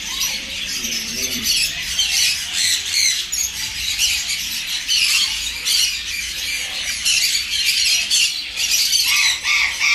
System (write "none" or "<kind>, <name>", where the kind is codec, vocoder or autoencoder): vocoder, BigVGAN v2